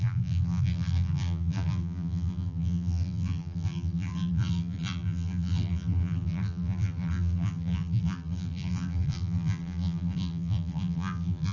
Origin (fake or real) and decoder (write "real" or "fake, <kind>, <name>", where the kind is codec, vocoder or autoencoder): fake, vocoder, BigVGAN v2